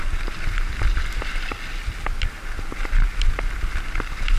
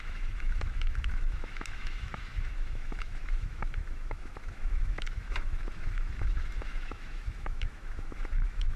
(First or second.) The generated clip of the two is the second